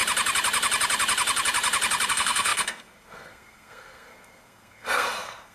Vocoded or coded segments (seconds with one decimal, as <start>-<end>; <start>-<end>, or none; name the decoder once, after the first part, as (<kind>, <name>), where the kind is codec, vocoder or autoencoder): 2.1-5.5 (codec, SNAC)